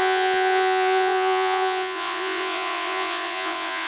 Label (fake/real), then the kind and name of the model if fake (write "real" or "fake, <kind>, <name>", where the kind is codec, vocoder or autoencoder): fake, vocoder, Vocos